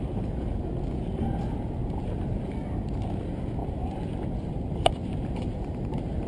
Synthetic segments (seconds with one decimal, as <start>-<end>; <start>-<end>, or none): 1.8-2.5; 3.6-6.3